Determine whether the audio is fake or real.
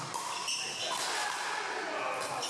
real